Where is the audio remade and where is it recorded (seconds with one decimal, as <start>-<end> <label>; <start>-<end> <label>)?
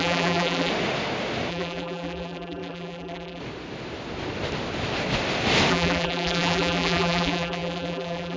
0.0-0.7 remade; 0.7-1.5 recorded; 1.5-3.4 remade; 3.4-5.7 recorded; 5.7-8.4 remade